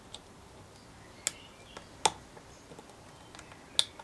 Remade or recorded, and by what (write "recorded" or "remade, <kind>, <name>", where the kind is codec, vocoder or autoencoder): recorded